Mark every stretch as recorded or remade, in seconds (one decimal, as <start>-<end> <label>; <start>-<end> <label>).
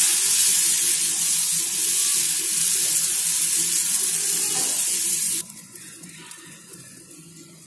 0.0-2.1 remade; 2.1-4.6 recorded; 4.6-7.7 remade